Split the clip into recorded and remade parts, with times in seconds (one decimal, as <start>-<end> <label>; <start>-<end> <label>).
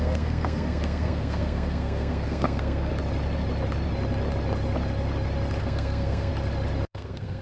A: 0.0-2.9 remade; 2.9-5.6 recorded; 5.6-6.3 remade; 6.3-6.9 recorded; 6.9-7.4 remade